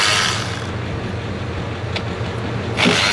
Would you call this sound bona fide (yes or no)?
yes